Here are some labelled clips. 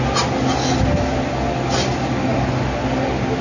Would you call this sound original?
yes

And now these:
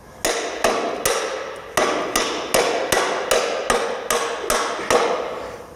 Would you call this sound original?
yes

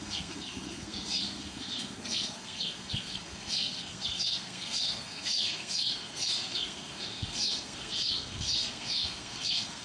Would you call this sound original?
no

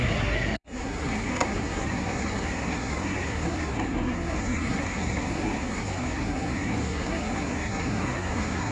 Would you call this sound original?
no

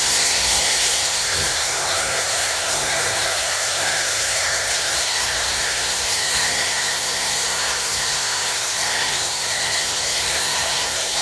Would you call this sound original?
no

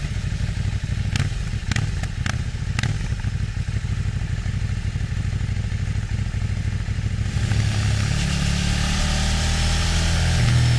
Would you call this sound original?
yes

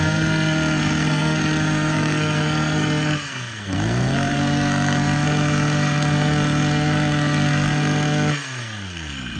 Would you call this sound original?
no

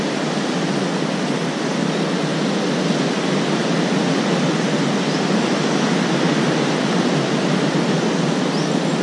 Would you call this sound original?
yes